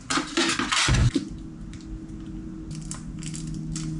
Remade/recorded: recorded